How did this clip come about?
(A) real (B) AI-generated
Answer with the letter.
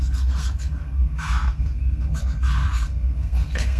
B